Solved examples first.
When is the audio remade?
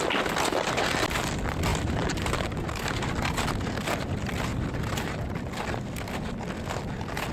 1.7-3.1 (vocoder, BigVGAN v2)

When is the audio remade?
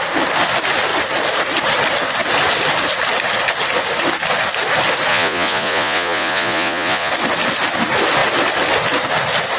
5.1-7.1 (vocoder, Vocos)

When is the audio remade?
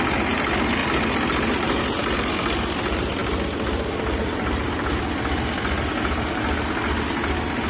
none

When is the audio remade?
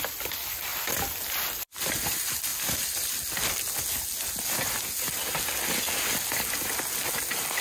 none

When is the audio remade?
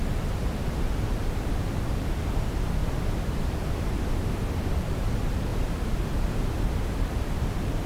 0.0-2.8 (vocoder, BigVGAN v2); 4.7-5.5; 6.6-7.9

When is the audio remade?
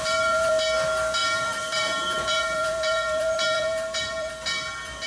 0.0-0.5 (vocoder, BigVGAN v2); 1.2-4.3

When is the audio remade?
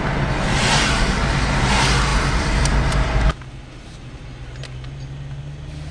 2.1-3.4 (vocoder, BigVGAN v2)